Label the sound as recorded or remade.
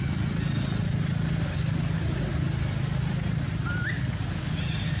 recorded